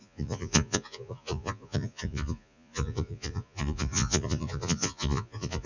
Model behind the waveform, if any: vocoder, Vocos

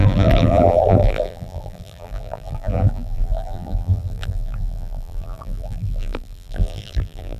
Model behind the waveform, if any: vocoder, BigVGAN v2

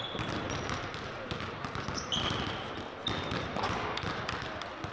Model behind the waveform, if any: none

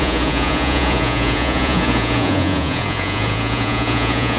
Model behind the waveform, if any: vocoder, Vocos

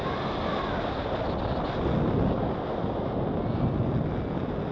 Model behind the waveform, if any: none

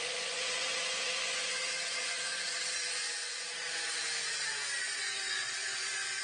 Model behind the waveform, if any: vocoder, Vocos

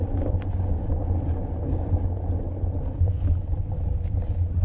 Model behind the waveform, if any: none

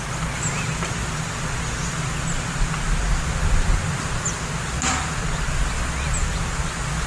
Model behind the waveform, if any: none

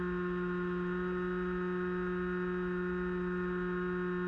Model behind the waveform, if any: none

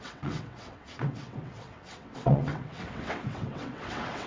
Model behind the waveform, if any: vocoder, WaveNeXt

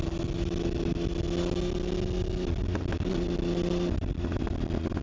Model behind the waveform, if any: none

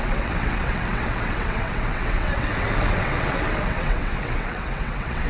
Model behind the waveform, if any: vocoder, WaveNeXt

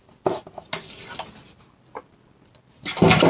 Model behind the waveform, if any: none